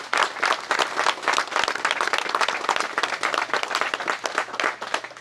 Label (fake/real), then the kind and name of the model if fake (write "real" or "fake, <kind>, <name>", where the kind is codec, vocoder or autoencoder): real